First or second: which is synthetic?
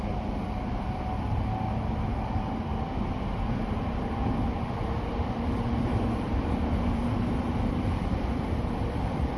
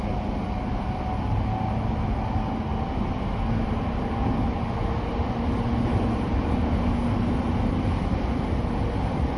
first